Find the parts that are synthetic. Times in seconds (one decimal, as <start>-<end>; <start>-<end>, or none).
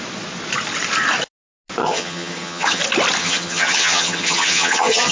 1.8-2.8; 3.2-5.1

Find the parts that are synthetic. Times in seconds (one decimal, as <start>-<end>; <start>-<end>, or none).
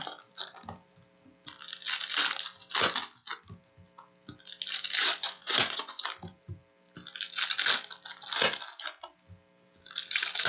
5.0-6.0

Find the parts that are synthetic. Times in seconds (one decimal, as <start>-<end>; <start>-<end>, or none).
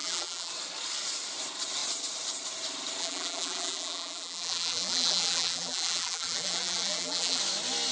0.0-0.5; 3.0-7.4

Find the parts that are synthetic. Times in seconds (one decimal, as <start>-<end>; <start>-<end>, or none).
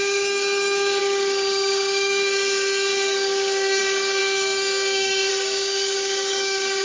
0.0-6.8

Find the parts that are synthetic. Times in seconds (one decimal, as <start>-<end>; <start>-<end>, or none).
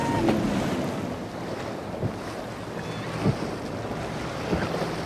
none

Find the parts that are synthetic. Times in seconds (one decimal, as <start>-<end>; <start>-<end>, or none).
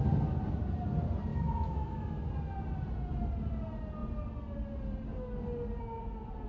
1.3-2.3